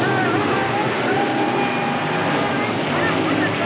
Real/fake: real